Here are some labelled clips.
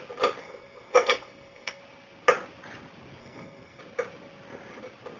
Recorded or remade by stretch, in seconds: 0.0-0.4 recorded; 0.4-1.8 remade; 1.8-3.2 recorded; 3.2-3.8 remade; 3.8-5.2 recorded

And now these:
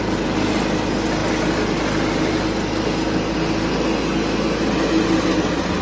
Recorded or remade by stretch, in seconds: 0.0-5.8 recorded

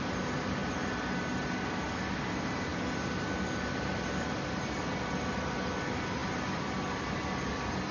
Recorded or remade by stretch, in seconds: 0.0-7.9 recorded

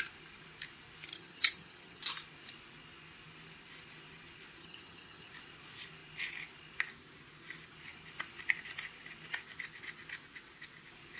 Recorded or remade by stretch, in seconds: 0.0-1.1 recorded; 1.1-2.0 remade; 2.0-4.6 recorded; 4.6-5.3 remade; 5.3-11.2 recorded

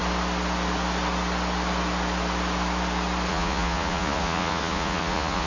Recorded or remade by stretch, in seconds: 0.0-3.3 recorded; 3.3-5.5 remade